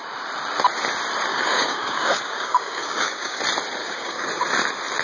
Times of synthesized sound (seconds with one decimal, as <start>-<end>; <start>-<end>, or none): 1.3-3.4; 3.8-4.3

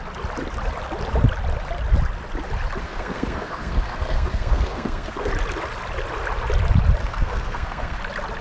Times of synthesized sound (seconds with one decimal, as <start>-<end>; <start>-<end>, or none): 2.8-5.3; 7.0-8.0

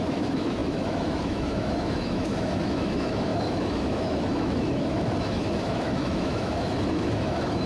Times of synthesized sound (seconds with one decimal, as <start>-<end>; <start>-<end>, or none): 0.0-7.7

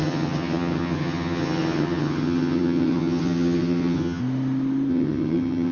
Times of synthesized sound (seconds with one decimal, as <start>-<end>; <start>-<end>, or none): 0.0-4.2; 4.9-5.7

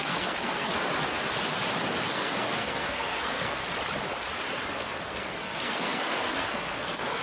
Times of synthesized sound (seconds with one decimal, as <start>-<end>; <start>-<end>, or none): 0.0-0.7; 2.1-3.6; 4.7-7.2

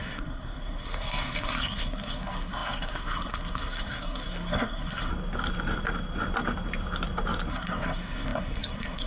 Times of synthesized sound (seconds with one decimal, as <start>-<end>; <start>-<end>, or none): 0.0-5.1; 7.5-9.1

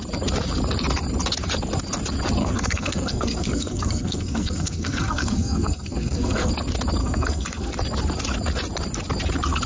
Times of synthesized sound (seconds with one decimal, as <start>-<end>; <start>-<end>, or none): 2.4-6.5; 7.0-7.7

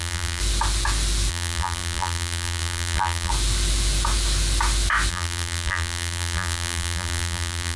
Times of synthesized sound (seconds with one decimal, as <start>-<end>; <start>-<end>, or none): 0.0-0.4; 1.3-3.3; 5.1-7.8